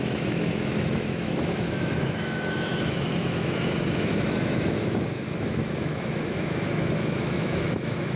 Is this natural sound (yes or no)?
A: no